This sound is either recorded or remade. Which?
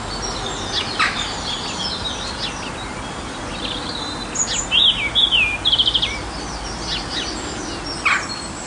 recorded